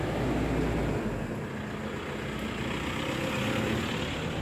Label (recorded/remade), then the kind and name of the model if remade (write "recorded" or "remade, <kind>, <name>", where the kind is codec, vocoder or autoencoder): recorded